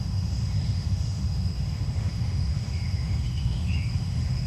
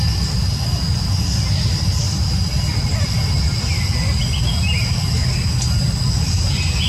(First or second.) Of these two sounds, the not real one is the first